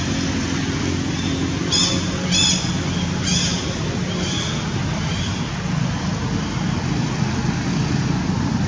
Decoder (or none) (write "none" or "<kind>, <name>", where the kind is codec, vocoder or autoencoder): none